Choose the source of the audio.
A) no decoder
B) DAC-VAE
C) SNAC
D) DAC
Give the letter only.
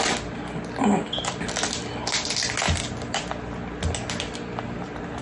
A